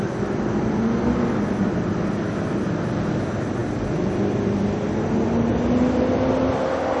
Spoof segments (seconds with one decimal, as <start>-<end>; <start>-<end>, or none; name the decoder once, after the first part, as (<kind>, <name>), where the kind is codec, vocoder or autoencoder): none